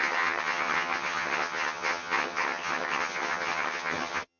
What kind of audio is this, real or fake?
fake